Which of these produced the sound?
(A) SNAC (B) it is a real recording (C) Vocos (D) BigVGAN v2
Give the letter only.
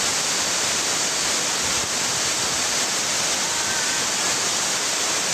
B